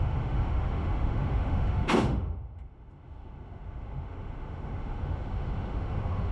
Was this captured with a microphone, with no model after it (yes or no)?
no